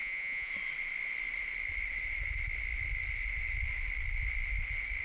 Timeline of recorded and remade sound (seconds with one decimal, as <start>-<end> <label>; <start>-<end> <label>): 0.0-0.5 remade; 0.5-5.0 recorded